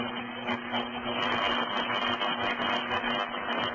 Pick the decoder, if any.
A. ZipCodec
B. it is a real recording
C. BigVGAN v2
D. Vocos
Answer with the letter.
B